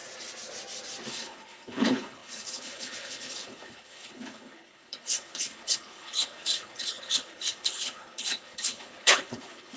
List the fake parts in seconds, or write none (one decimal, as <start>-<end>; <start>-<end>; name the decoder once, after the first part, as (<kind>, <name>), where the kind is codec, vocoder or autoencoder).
1.1-9.8 (codec, HILCodec)